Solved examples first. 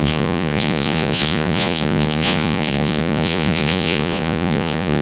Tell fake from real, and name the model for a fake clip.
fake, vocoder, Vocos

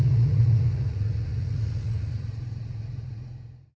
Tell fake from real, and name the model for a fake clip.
fake, vocoder, Vocos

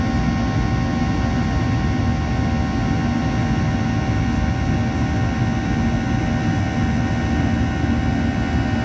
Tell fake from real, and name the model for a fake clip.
real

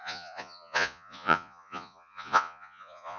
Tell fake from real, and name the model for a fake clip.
fake, vocoder, Vocos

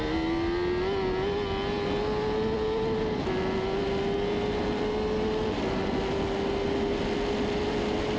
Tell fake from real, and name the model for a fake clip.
real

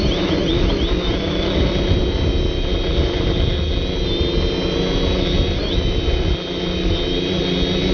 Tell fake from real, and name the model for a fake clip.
real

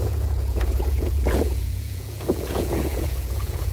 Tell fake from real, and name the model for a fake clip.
fake, vocoder, Vocos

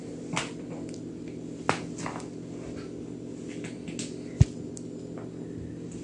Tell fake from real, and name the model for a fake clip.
real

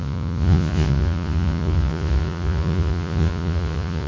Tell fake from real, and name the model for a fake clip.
fake, vocoder, Vocos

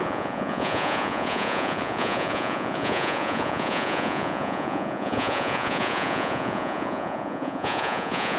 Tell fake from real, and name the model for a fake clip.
fake, vocoder, Vocos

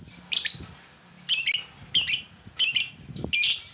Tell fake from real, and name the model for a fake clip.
real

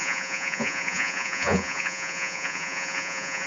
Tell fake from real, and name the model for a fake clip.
fake, vocoder, Vocos